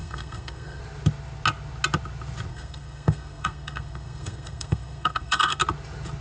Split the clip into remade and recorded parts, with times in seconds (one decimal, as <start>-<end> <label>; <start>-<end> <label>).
0.0-0.8 remade; 0.8-2.5 recorded; 2.5-5.6 remade; 5.6-6.2 recorded